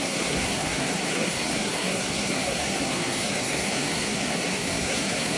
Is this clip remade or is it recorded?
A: remade